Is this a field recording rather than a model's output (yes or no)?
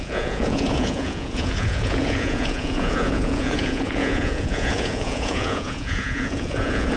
no